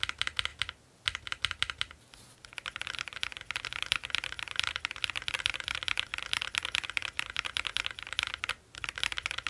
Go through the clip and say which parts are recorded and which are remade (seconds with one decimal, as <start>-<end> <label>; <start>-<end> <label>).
0.0-9.5 recorded